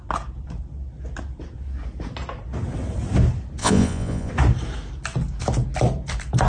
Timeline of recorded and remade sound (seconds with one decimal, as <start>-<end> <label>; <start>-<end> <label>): 0.0-3.6 recorded; 3.6-4.3 remade; 4.3-6.5 recorded